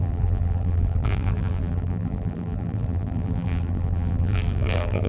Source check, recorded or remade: remade